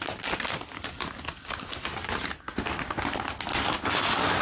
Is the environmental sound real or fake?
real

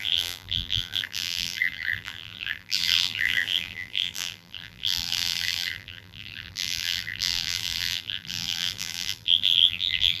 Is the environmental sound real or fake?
fake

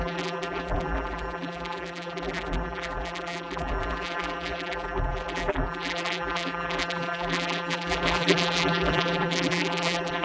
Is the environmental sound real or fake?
fake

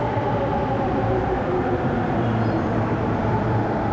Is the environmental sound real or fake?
fake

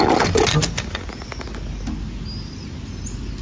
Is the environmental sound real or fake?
real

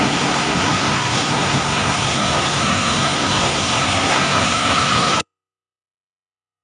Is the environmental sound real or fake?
fake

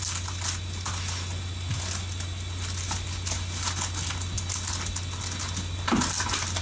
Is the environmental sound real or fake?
real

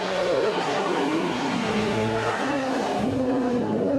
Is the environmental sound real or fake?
fake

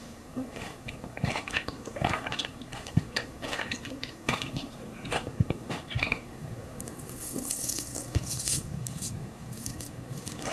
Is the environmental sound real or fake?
fake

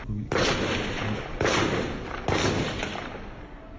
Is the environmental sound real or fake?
real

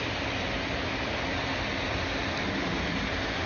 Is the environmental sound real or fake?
real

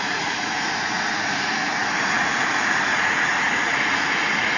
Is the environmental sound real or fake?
fake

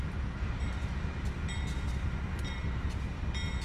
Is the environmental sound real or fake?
real